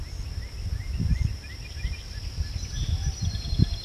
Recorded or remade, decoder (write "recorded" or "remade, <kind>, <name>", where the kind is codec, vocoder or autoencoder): recorded